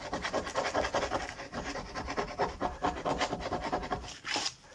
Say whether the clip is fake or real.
real